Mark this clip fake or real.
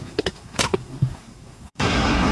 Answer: fake